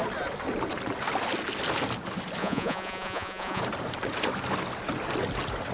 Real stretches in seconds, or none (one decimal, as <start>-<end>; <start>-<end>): 0.0-2.4; 3.6-5.7